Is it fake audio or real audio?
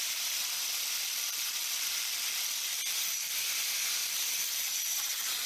fake